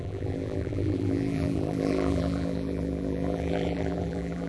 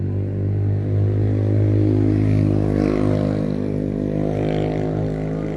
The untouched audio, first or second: second